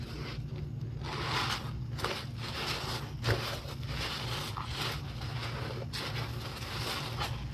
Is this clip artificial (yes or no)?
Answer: no